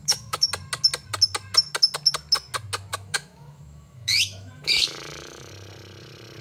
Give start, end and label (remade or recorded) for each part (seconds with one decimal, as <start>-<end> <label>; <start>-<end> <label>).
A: 0.0-0.5 remade; 0.5-2.9 recorded; 2.9-5.5 remade; 5.5-6.4 recorded